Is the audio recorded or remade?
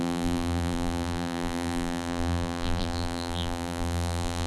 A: remade